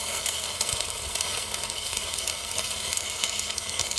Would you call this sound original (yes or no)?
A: no